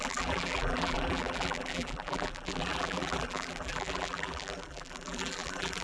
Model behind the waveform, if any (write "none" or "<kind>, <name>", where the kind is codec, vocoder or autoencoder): vocoder, BigVGAN v2